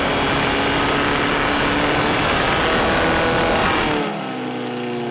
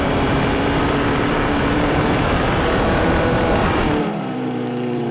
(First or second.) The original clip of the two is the first